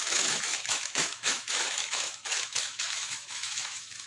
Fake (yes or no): yes